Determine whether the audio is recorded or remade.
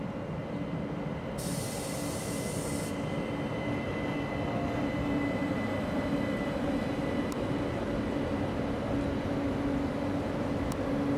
recorded